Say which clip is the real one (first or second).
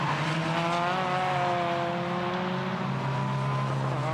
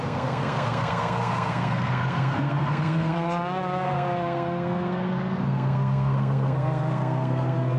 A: first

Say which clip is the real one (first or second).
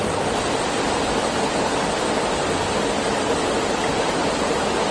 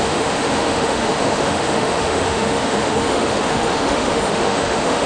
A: first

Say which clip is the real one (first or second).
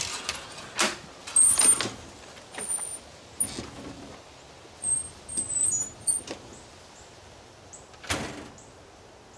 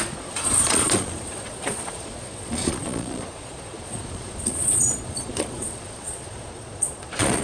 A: first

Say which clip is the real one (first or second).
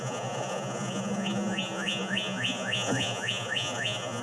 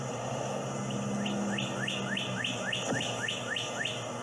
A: second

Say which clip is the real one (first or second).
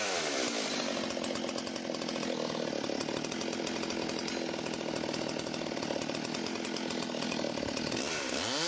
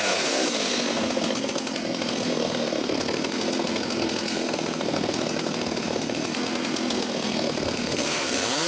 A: first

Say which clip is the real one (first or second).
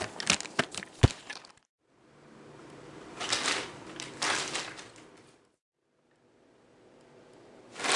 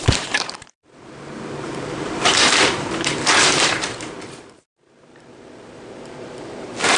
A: first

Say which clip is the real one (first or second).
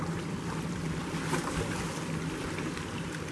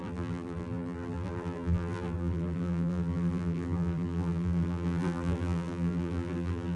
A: first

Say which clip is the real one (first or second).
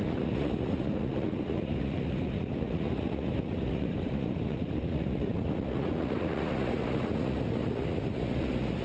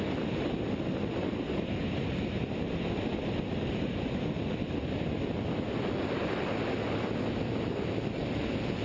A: second